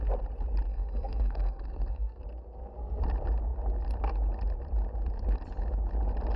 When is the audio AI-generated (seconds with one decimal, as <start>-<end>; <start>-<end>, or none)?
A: 0.7-2.2